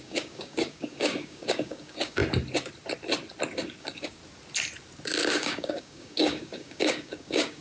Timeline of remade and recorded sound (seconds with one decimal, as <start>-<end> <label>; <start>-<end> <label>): 0.0-2.2 remade; 2.2-3.8 recorded; 3.8-4.2 remade; 4.2-5.3 recorded; 5.3-7.6 remade